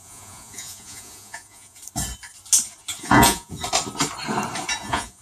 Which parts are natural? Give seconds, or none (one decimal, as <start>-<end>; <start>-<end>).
1.8-3.0; 3.6-4.8